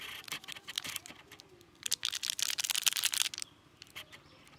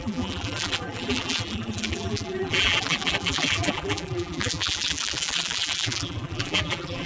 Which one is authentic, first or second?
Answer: first